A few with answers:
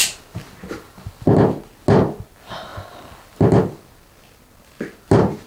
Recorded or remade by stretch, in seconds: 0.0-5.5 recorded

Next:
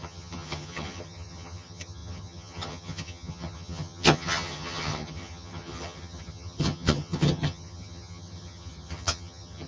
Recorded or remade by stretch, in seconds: 0.0-9.7 remade

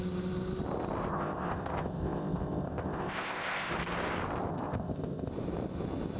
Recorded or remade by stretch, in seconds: 0.0-1.1 recorded; 1.1-3.7 remade; 3.7-4.5 recorded; 4.5-5.3 remade; 5.3-6.2 recorded

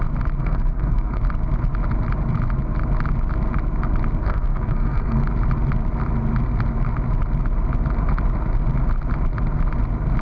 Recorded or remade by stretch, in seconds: 0.0-0.4 recorded; 0.4-1.2 remade; 1.2-4.2 recorded; 4.2-5.2 remade; 5.2-10.2 recorded

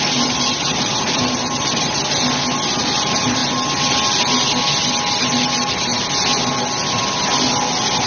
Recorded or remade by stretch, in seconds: 0.0-2.0 remade; 2.0-2.8 recorded; 2.8-3.4 remade; 3.4-5.2 recorded; 5.2-5.9 remade; 5.9-8.1 recorded

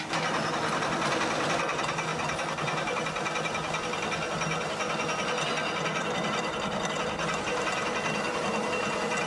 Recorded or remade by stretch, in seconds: 0.0-9.3 recorded